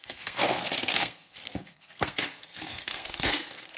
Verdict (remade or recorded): remade